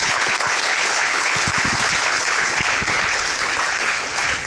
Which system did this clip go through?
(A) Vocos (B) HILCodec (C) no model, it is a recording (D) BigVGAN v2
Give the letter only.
B